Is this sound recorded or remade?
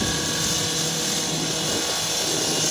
recorded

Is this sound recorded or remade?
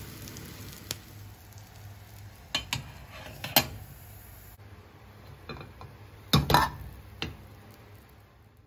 recorded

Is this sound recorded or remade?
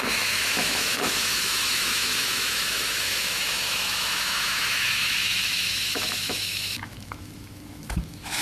remade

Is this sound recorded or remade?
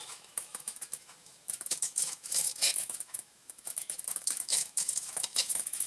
remade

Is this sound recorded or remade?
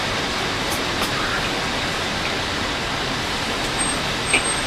recorded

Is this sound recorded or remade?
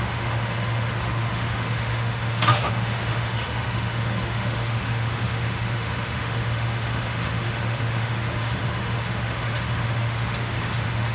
remade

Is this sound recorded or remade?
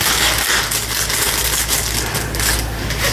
recorded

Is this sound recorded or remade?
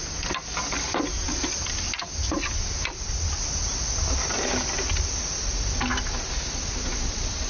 recorded